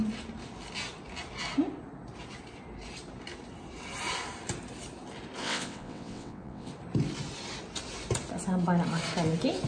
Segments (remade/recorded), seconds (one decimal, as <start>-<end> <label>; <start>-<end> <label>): 0.0-5.4 recorded; 5.4-6.7 remade; 6.7-9.7 recorded